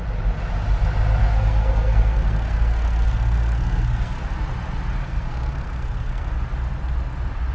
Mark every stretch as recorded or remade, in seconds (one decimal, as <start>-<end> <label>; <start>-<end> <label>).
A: 0.0-1.2 recorded; 1.2-4.2 remade; 4.2-5.0 recorded; 5.0-6.3 remade; 6.3-7.5 recorded